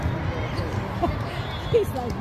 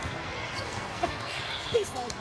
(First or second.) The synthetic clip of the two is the second